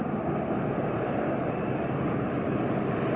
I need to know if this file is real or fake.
fake